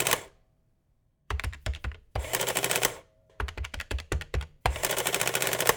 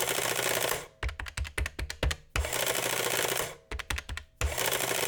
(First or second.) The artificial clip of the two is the first